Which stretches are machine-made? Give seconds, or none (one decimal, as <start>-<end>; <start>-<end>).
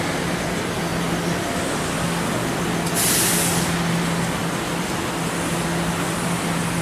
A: none